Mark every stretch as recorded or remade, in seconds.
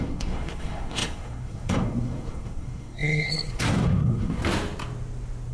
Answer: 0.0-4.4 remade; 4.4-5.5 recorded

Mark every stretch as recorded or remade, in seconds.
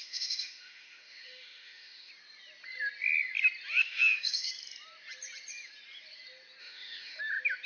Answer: 0.0-2.1 remade; 2.1-3.8 recorded; 3.8-4.5 remade; 4.5-6.6 recorded; 6.6-7.2 remade; 7.2-7.7 recorded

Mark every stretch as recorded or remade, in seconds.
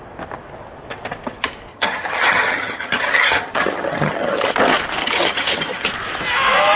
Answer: 0.0-1.7 recorded; 1.7-4.5 remade; 4.5-5.0 recorded; 5.0-5.9 remade; 5.9-6.8 recorded